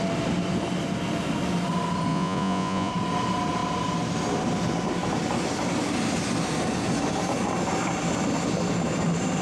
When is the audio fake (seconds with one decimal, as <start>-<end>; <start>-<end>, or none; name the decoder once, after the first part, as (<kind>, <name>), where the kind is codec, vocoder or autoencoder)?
2.1-2.9 (vocoder, Vocos)